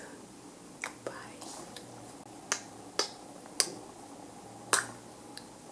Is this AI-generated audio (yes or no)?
no